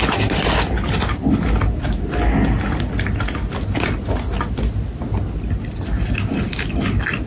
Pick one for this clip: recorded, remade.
recorded